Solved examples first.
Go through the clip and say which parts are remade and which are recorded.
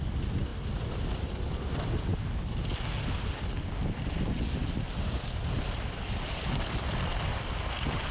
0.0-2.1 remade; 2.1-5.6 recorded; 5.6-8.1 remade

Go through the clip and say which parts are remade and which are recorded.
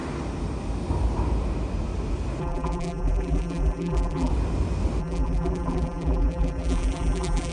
0.0-2.4 recorded; 2.4-4.3 remade; 4.3-5.0 recorded; 5.0-7.5 remade